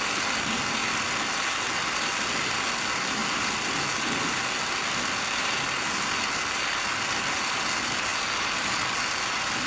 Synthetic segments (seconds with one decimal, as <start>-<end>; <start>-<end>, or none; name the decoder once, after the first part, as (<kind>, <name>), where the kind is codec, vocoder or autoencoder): none